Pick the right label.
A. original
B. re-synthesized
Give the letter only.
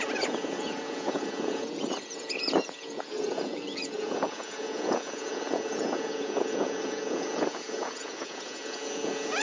B